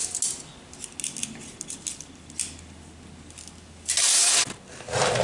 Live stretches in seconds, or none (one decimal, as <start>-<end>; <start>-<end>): 0.0-5.2